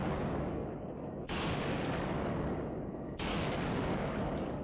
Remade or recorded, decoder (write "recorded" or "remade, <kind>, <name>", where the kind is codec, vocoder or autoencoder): remade, codec, DAC